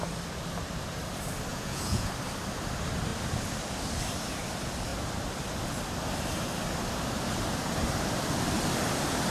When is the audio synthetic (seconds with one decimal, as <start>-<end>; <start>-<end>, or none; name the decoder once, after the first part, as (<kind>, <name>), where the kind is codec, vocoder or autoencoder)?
1.5-2.1 (vocoder, Vocos)